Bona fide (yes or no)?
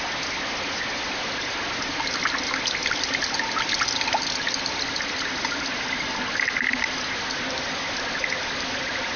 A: yes